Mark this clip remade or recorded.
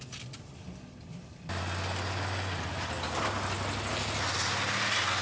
recorded